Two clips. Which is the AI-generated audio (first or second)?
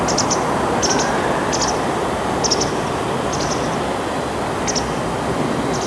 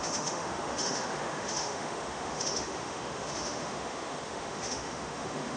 second